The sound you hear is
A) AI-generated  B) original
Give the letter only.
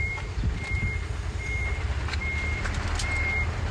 A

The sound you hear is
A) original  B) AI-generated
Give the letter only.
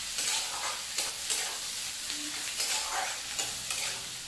A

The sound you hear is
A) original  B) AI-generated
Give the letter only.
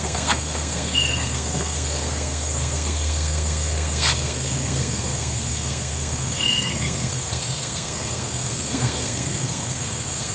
B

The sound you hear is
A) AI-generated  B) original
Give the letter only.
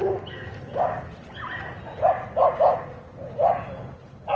B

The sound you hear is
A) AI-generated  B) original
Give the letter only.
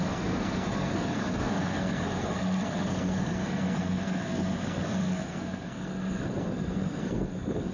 A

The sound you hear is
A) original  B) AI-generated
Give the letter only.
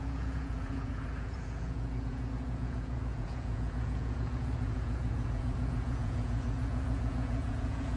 B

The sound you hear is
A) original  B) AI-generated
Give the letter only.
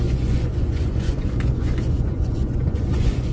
B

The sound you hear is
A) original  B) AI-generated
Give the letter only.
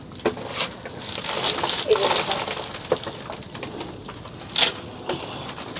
A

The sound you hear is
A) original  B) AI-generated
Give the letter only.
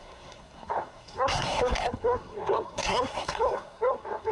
B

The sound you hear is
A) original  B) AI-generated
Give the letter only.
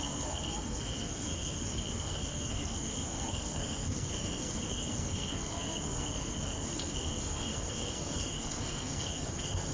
B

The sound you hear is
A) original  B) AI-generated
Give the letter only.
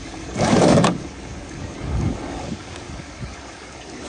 B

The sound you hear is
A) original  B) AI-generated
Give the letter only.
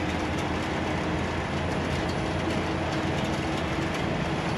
A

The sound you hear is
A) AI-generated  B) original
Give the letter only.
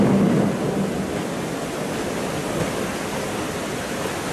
B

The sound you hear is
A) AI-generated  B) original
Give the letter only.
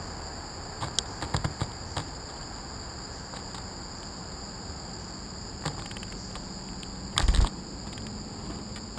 B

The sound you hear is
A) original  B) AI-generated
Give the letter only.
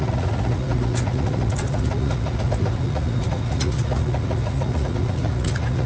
B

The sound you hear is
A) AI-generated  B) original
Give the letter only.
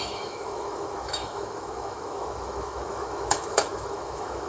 A